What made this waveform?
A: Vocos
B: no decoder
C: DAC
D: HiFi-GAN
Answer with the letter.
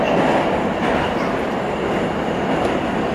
B